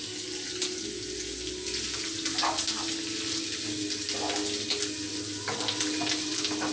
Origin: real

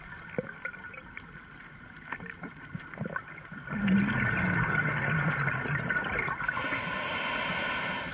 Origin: real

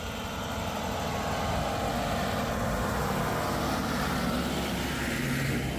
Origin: real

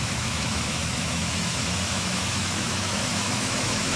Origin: fake